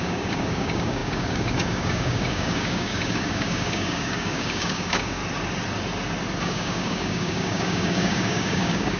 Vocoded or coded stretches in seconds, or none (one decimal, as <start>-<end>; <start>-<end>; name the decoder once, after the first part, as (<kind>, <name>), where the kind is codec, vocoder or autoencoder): 0.0-5.2 (codec, DAC); 6.4-9.0